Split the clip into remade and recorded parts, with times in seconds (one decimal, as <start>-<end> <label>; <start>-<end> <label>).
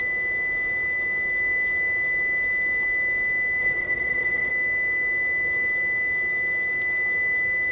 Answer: 0.0-3.6 recorded; 3.6-4.5 remade; 4.5-7.7 recorded